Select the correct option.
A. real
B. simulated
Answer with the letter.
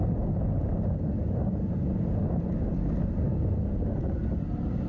A